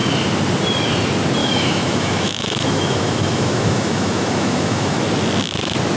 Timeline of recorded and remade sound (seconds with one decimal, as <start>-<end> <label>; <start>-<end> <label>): 0.0-1.4 recorded; 1.4-5.0 remade; 5.0-6.0 recorded